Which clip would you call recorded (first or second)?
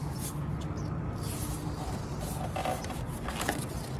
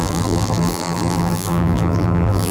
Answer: first